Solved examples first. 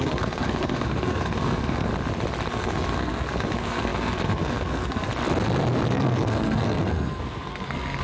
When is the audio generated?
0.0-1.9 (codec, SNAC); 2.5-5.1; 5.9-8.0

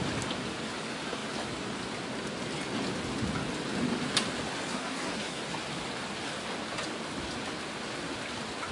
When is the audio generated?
4.7-5.4 (codec, SNAC)

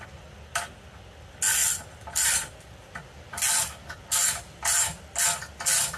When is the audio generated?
none

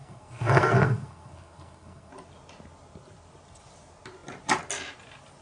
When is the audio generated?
0.0-2.1 (codec, SNAC)

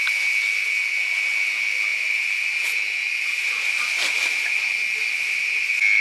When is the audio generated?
none